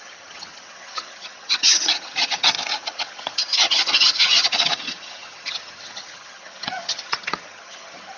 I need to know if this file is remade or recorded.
remade